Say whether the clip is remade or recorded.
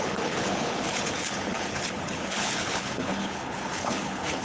remade